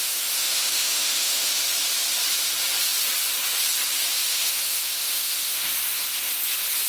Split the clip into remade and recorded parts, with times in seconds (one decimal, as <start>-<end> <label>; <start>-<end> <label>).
0.0-1.5 remade; 1.5-4.3 recorded; 4.3-6.4 remade; 6.4-6.9 recorded